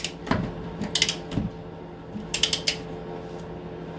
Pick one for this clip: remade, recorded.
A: recorded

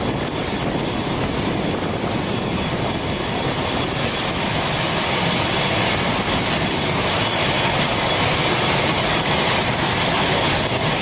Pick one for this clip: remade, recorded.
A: recorded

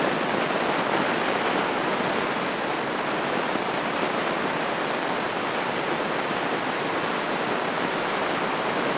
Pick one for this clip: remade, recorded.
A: recorded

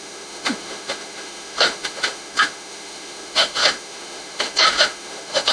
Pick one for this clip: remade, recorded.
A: remade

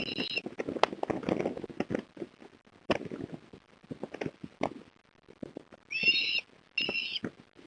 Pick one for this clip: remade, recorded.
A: recorded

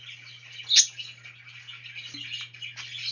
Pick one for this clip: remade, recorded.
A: recorded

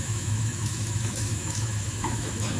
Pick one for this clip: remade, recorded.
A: remade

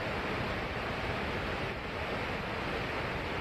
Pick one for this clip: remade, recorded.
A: recorded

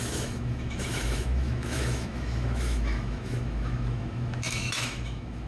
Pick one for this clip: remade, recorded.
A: remade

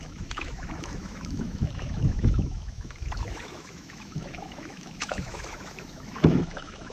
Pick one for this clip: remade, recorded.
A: remade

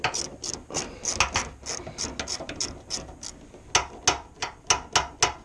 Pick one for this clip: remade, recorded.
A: recorded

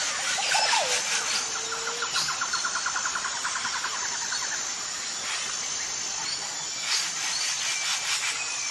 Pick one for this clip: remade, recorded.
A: recorded